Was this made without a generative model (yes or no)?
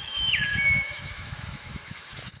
no